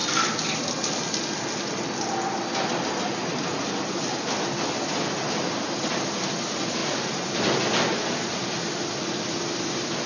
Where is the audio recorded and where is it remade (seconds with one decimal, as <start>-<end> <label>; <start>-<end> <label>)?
0.0-10.1 recorded

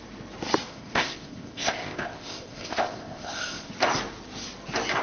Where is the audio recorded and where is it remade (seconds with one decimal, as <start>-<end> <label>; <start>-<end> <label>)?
0.0-0.7 recorded; 0.7-3.7 remade; 3.7-5.0 recorded

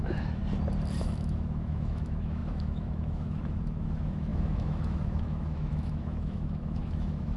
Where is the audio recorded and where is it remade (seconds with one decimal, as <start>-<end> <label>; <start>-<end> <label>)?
0.0-0.4 remade; 0.4-1.0 recorded; 1.0-7.4 remade

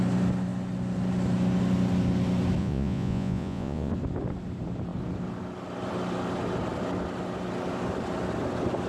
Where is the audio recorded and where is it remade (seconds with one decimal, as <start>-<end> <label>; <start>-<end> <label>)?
0.0-2.6 recorded; 2.6-3.9 remade; 3.9-8.9 recorded

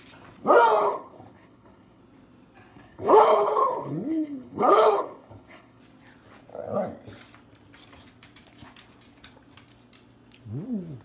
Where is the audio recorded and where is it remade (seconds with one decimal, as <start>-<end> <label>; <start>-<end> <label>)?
0.0-0.8 recorded; 0.8-2.0 remade; 2.0-2.7 recorded; 2.7-5.8 remade; 5.8-11.0 recorded

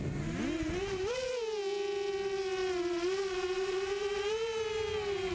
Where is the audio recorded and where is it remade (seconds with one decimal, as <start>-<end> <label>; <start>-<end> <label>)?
0.0-2.6 recorded; 2.6-4.2 remade; 4.2-5.3 recorded